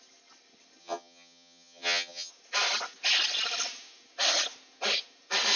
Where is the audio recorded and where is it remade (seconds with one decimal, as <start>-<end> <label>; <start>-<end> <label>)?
0.0-0.8 recorded; 0.8-2.3 remade; 2.3-5.6 recorded